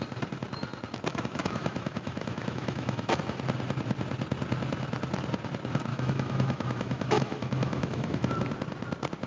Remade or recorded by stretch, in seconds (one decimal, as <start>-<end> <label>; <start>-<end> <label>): 0.0-1.1 recorded; 1.1-3.2 remade; 3.2-5.9 recorded; 5.9-8.3 remade; 8.3-9.3 recorded